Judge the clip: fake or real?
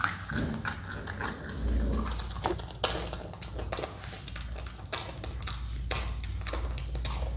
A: real